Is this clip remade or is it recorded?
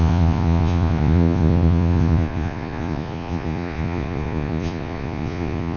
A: remade